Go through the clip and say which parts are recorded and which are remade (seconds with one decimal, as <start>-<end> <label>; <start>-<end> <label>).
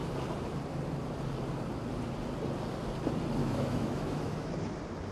0.0-3.4 recorded; 3.4-4.5 remade; 4.5-5.1 recorded